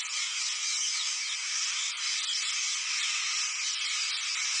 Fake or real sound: real